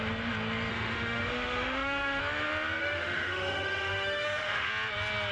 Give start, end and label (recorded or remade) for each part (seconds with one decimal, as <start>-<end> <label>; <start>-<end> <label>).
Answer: 0.0-0.7 recorded; 0.7-2.2 remade; 2.2-2.8 recorded; 2.8-4.7 remade; 4.7-5.3 recorded